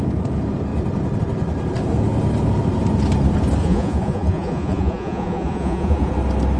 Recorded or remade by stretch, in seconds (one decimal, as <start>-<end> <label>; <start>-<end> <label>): 0.0-3.6 recorded; 3.6-6.1 remade; 6.1-6.6 recorded